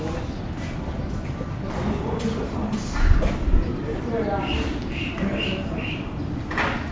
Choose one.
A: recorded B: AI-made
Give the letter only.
A